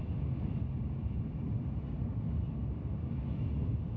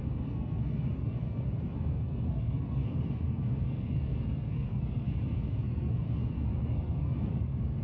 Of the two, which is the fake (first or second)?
second